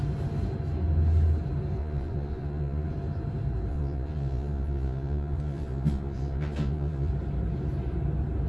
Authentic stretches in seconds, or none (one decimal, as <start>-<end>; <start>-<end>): 0.0-1.8; 2.9-3.7; 7.1-8.5